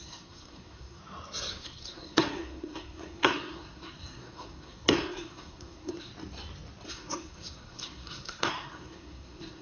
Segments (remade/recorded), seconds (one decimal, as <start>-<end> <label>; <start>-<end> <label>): 0.0-1.0 remade; 1.0-1.5 recorded; 1.5-6.1 remade; 6.1-6.9 recorded; 6.9-9.6 remade